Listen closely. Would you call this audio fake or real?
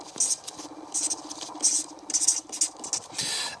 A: real